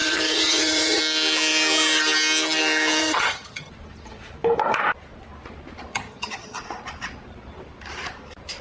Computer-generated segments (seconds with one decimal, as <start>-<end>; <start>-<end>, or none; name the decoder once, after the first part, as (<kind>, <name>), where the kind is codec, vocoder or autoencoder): 0.0-1.0 (vocoder, HiFi-GAN); 3.0-3.7; 5.9-6.6